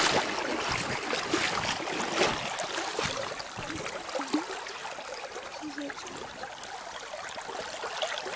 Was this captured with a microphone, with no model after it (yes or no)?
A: yes